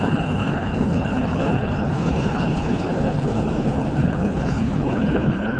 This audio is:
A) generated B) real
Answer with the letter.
A